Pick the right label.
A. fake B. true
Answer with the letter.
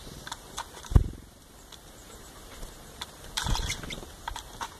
A